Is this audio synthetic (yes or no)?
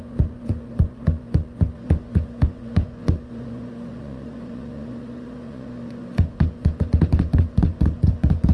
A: yes